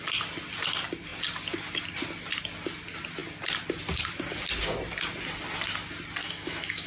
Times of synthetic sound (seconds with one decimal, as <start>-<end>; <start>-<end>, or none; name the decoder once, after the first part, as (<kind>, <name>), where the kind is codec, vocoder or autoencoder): 6.2-6.9 (autoencoder, DAC-VAE)

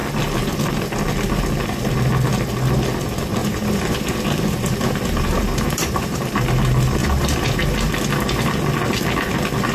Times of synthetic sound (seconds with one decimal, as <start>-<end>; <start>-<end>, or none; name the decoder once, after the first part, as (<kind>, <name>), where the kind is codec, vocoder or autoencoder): 3.4-6.6 (vocoder, BigVGAN v2); 7.0-7.9

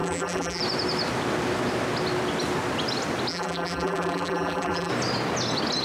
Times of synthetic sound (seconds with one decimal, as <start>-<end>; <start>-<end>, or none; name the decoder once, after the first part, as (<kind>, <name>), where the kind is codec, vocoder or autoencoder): 0.0-0.6 (vocoder, BigVGAN v2); 3.3-4.9

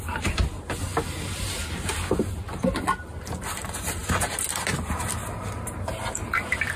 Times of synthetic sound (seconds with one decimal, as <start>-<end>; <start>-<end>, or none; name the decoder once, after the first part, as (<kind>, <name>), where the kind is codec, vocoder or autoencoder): none

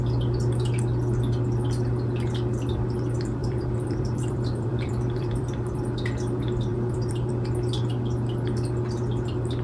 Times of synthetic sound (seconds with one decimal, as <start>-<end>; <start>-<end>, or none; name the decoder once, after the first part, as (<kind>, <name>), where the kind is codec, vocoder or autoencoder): 3.4-5.5 (vocoder, BigVGAN v2); 6.7-7.3

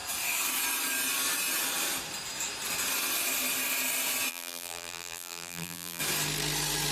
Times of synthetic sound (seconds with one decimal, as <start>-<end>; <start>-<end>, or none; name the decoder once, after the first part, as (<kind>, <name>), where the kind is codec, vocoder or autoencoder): 4.3-6.0 (vocoder, BigVGAN v2)

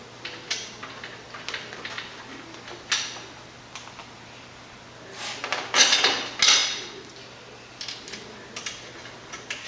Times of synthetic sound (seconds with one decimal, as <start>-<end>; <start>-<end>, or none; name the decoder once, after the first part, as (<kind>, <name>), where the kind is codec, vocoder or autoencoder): none